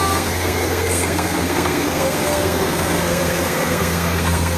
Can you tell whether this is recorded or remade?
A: remade